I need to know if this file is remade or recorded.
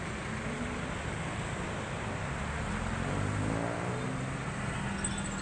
recorded